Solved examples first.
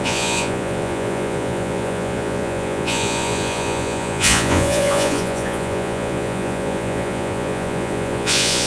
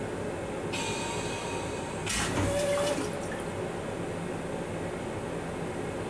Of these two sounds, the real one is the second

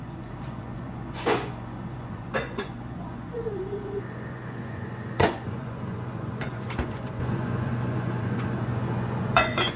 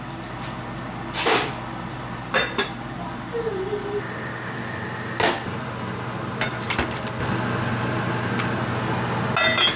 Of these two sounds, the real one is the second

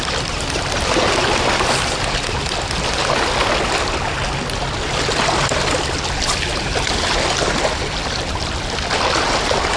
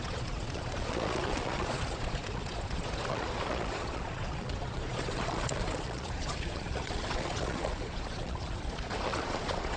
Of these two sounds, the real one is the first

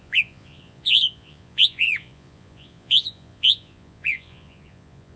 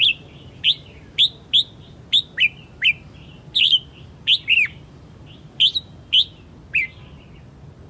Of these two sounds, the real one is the second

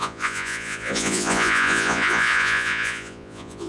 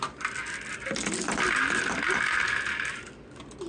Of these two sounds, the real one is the second